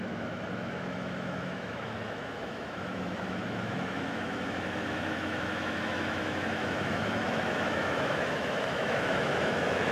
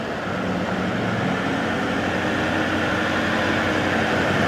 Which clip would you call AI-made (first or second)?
first